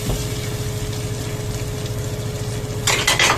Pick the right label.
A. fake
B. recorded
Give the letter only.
B